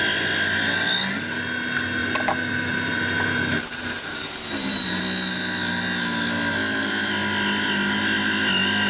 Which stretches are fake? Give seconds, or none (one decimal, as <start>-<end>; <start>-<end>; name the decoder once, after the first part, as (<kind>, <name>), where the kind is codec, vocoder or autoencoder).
2.0-5.0 (vocoder, BigVGAN v2)